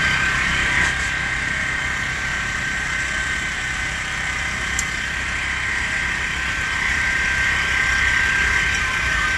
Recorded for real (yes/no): no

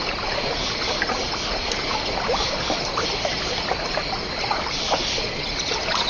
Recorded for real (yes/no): yes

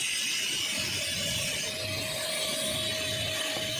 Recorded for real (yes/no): yes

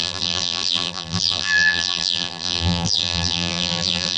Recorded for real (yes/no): no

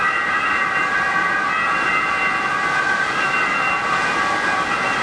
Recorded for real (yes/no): yes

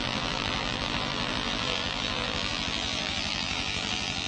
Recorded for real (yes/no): no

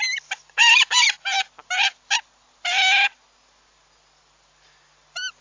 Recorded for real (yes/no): yes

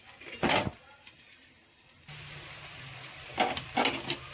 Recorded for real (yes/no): no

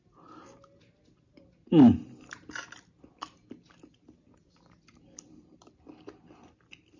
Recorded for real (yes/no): yes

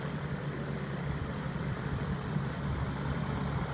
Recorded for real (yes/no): no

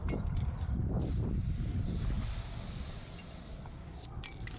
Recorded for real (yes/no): no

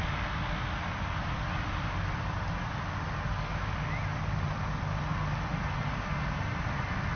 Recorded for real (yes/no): yes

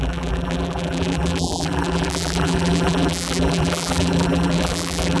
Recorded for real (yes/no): no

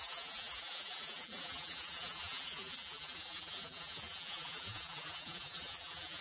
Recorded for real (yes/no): no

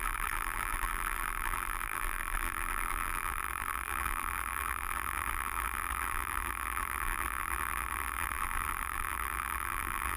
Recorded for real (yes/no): no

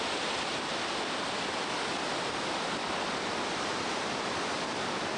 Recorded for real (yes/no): no